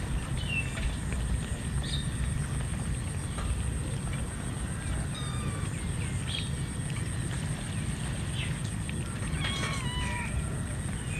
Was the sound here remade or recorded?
recorded